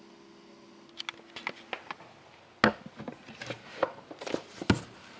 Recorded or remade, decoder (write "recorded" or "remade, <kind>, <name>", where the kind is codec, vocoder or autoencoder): recorded